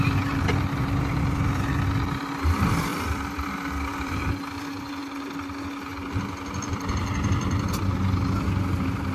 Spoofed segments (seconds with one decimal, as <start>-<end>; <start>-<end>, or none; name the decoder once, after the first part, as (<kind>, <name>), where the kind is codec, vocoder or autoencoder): 2.9-3.5 (vocoder, BigVGAN v2); 3.9-4.9; 5.9-7.8